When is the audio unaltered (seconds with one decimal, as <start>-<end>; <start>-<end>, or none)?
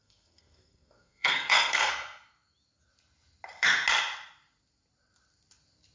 1.9-5.9